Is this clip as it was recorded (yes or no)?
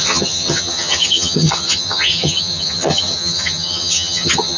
no